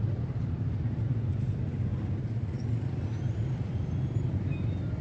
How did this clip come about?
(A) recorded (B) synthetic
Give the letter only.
A